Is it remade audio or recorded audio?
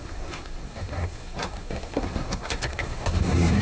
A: remade